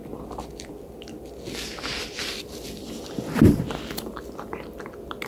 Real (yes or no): no